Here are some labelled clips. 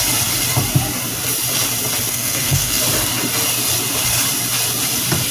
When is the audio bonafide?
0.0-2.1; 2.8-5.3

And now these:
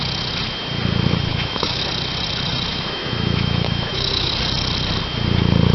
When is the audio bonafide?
0.0-1.3; 1.8-2.7; 4.3-5.7

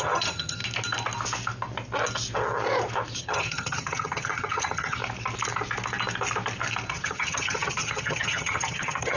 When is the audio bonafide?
0.6-3.2; 5.0-6.9

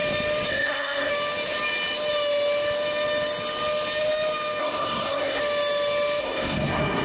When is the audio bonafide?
0.0-0.5; 1.1-4.6; 5.4-6.2

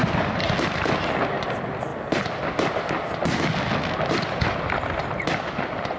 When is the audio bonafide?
0.9-6.0

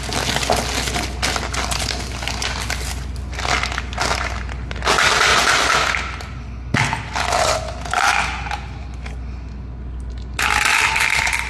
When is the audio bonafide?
0.0-11.5